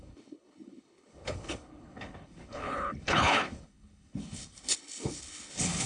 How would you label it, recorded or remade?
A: remade